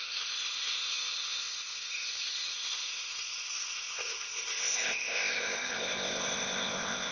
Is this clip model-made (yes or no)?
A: yes